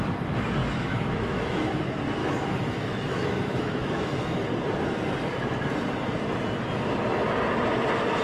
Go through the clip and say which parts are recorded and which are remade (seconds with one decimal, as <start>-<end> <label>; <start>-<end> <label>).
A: 0.0-0.6 recorded; 0.6-1.8 remade; 1.8-2.2 recorded; 2.2-4.5 remade; 4.5-8.2 recorded